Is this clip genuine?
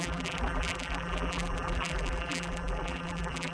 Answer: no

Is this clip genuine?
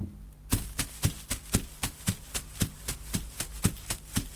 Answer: yes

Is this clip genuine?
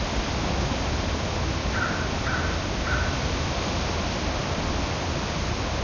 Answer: no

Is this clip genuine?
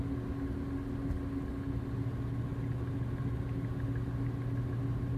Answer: yes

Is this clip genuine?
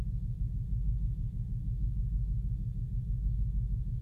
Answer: yes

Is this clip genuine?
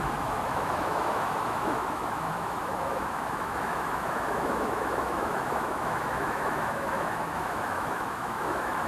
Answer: no